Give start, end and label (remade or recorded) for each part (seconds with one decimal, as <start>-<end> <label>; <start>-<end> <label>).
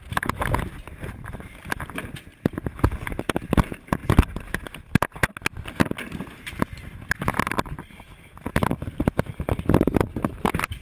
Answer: 0.0-2.3 remade; 2.3-3.2 recorded; 3.2-4.0 remade; 4.0-5.8 recorded; 5.8-10.8 remade